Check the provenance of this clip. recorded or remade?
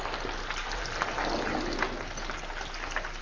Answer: recorded